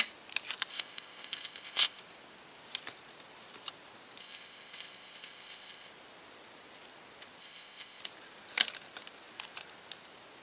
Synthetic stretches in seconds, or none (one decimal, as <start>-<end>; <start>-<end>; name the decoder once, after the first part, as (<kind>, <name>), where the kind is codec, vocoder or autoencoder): 0.7-2.0 (codec, ZipCodec); 4.2-5.9; 7.4-8.0